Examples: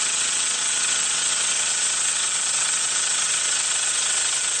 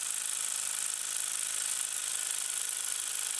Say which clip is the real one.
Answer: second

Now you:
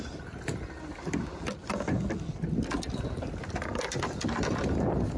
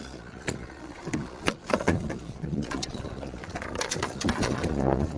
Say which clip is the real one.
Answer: first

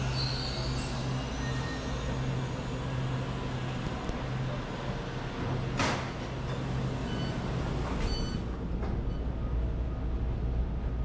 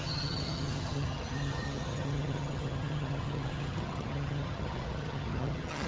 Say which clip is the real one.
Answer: first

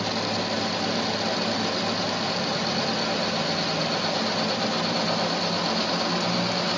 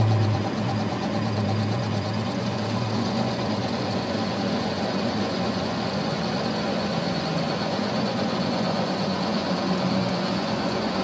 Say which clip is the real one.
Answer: first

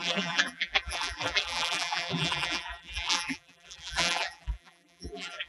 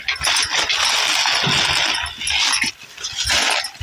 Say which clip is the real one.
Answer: second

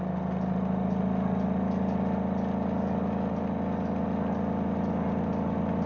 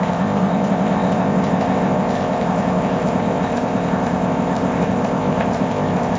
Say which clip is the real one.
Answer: first